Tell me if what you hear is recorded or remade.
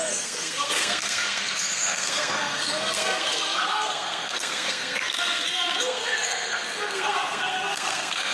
remade